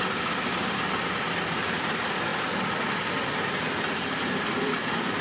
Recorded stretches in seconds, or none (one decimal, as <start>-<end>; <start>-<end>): none